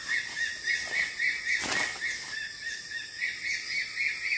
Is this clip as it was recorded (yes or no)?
yes